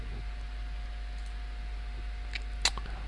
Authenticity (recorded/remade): recorded